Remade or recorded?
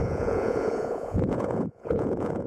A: remade